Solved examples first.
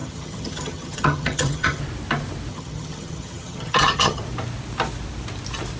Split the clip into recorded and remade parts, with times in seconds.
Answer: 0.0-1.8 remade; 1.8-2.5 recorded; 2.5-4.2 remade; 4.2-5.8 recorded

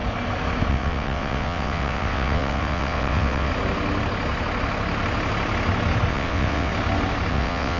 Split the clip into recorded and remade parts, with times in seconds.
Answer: 0.0-0.7 recorded; 0.7-3.5 remade; 3.5-6.1 recorded; 6.1-6.7 remade; 6.7-7.3 recorded; 7.3-7.8 remade

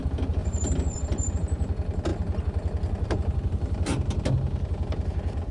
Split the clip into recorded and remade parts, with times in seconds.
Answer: 0.0-0.4 recorded; 0.4-1.3 remade; 1.3-5.5 recorded

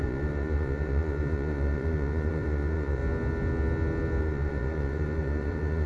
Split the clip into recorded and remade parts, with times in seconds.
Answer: 0.0-3.0 remade; 3.0-4.2 recorded; 4.2-5.9 remade

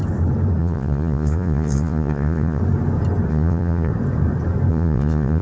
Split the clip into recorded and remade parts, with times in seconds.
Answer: 0.0-0.6 recorded; 0.6-2.6 remade; 2.6-3.3 recorded; 3.3-3.9 remade; 3.9-4.7 recorded; 4.7-5.4 remade